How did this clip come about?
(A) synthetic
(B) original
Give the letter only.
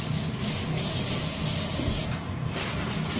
B